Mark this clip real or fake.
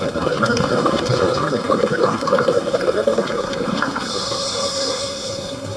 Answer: fake